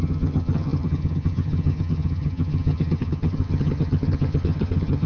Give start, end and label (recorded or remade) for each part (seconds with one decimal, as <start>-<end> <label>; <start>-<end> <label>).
0.0-5.1 remade